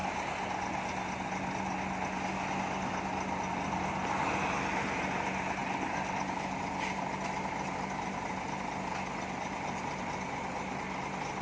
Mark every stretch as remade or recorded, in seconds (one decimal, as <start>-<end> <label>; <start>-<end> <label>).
0.0-11.4 recorded